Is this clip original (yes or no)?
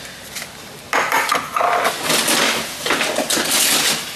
yes